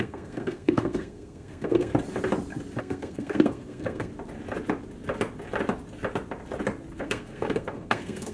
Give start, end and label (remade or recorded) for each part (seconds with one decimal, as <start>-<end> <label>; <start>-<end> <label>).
0.0-1.9 remade; 1.9-2.8 recorded; 2.8-4.1 remade; 4.1-6.9 recorded; 6.9-8.3 remade